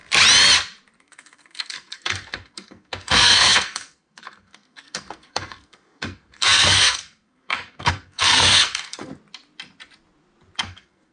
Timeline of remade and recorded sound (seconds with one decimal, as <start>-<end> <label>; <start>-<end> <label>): 0.0-1.0 recorded; 1.0-9.1 remade; 9.1-10.6 recorded; 10.6-11.1 remade